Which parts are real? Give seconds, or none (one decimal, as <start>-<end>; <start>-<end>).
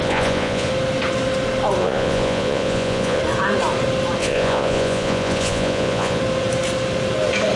0.7-1.8; 3.2-4.2; 6.2-7.6